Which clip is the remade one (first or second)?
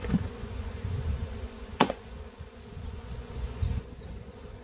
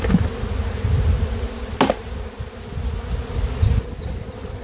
first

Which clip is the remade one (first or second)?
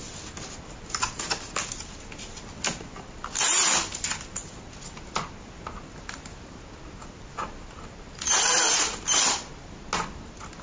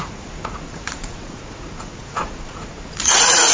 second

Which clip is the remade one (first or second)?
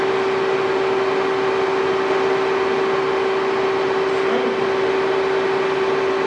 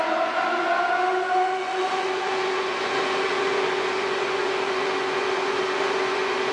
second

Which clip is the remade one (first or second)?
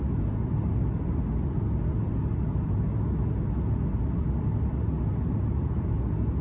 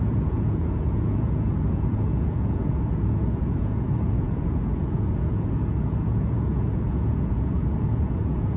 second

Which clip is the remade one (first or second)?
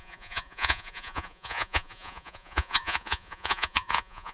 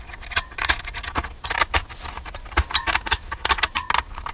first